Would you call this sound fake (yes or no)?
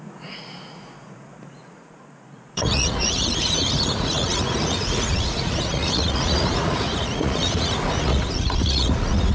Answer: yes